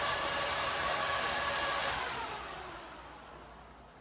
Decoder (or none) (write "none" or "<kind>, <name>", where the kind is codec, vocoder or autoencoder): vocoder, BigVGAN v2